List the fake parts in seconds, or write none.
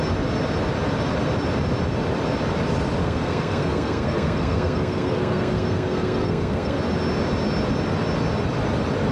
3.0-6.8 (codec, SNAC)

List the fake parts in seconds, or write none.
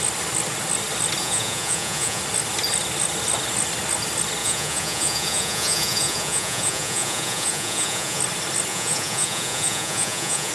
1.2-2.2 (vocoder, Vocos); 4.4-8.2; 8.7-10.5